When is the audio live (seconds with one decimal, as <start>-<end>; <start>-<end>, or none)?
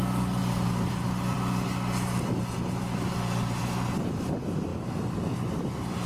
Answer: 0.0-4.7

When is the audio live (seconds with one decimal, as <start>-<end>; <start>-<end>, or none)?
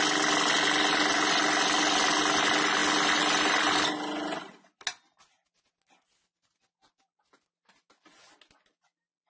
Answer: 0.0-9.3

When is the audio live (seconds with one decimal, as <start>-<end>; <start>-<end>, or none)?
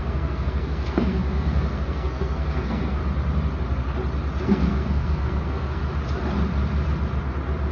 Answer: 3.0-4.4; 5.8-7.7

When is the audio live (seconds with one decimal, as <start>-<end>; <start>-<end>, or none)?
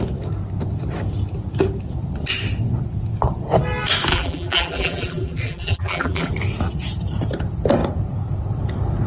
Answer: 0.0-4.1; 6.3-9.1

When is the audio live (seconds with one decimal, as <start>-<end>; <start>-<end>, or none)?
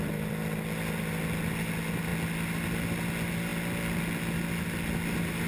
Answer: 0.0-5.5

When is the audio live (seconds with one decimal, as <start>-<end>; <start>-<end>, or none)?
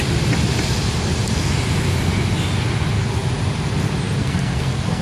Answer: 0.0-4.2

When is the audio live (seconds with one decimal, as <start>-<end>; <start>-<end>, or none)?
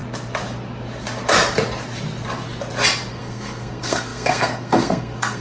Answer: 0.0-3.1